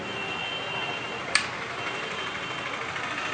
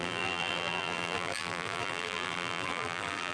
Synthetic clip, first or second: second